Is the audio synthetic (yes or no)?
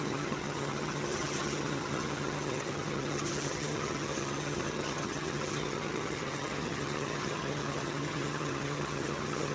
yes